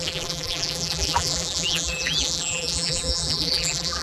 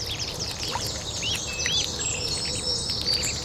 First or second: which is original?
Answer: second